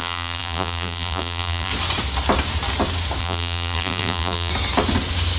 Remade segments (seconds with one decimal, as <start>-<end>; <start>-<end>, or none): 0.0-1.7; 3.2-4.5